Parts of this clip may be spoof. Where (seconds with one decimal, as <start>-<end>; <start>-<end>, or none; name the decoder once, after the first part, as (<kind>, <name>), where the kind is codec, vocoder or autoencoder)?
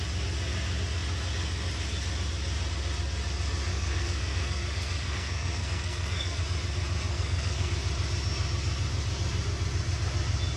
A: 3.7-6.4 (codec, SNAC); 7.1-7.7